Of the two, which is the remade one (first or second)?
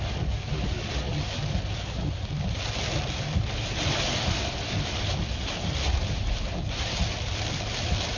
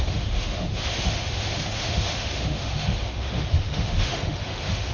second